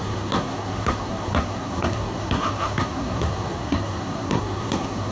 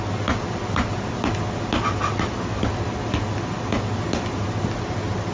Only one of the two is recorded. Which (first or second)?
second